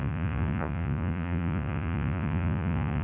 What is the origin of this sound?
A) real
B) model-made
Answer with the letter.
B